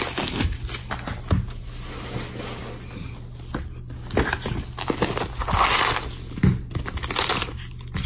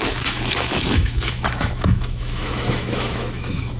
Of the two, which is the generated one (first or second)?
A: second